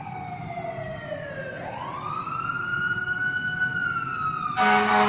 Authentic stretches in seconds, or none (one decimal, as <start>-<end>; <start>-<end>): 0.0-2.7; 3.6-5.1